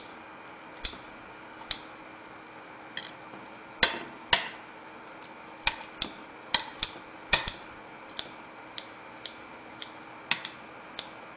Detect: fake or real real